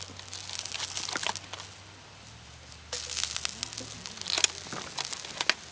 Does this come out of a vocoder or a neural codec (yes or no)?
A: no